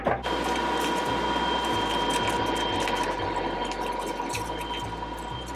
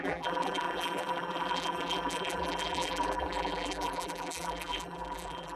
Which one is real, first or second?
first